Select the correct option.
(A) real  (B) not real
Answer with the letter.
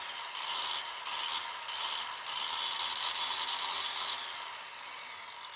A